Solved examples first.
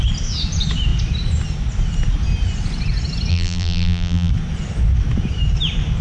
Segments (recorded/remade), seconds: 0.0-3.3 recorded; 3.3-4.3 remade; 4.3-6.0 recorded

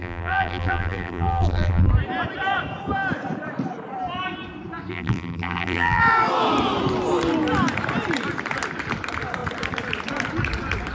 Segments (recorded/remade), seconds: 0.0-1.9 remade; 1.9-4.9 recorded; 4.9-6.0 remade; 6.0-10.9 recorded

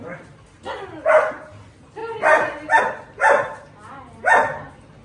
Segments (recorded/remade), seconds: 0.0-2.0 remade; 2.0-2.8 recorded; 2.8-5.0 remade

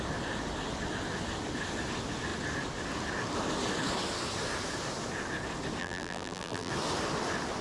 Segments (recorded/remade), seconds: 0.0-5.8 recorded; 5.8-6.7 remade; 6.7-7.6 recorded

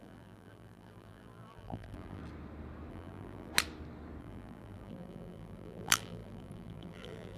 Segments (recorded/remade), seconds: 0.0-2.2 remade; 2.2-2.9 recorded; 2.9-3.5 remade; 3.5-4.2 recorded; 4.2-7.4 remade

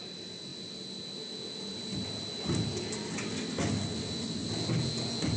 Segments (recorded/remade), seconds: 0.0-5.4 recorded